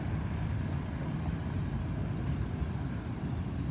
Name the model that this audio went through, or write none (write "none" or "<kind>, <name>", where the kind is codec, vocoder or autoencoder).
none